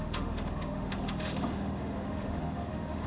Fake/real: fake